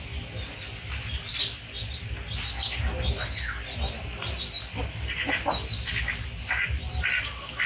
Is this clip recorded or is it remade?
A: recorded